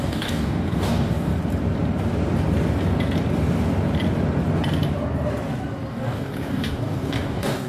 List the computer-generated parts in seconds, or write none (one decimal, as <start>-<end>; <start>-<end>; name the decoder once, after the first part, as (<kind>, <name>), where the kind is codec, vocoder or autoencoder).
0.0-1.3 (codec, DAC); 5.9-7.7